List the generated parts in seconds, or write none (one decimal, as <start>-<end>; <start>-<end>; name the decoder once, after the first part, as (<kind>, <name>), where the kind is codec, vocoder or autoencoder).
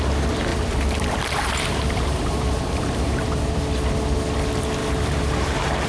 0.5-3.6 (vocoder, BigVGAN v2); 4.8-5.9